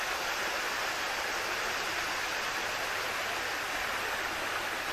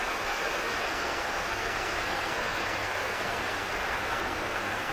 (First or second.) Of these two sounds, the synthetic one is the second